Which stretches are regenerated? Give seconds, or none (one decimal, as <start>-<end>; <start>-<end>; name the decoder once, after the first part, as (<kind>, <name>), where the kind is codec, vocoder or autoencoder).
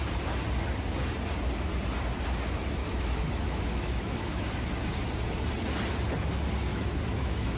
2.8-4.4 (autoencoder, DAC-VAE); 6.7-7.6